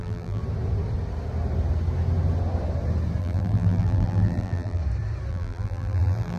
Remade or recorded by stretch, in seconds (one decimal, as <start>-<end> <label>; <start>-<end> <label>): 0.0-0.4 remade; 0.4-3.2 recorded; 3.2-4.8 remade; 4.8-5.3 recorded; 5.3-6.4 remade